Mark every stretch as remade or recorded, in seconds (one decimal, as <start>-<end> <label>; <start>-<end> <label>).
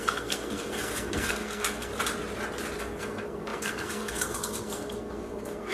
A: 0.0-1.9 remade; 1.9-2.8 recorded; 2.8-5.7 remade